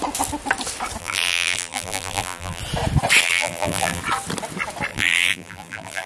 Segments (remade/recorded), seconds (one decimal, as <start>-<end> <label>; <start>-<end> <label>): 0.0-1.0 recorded; 1.0-2.6 remade; 2.6-3.2 recorded; 3.2-4.0 remade; 4.0-4.9 recorded; 4.9-6.1 remade